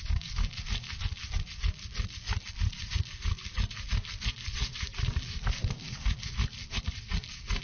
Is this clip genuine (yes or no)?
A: yes